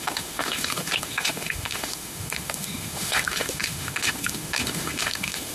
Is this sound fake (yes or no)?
yes